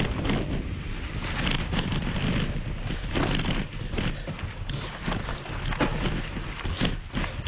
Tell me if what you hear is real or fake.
real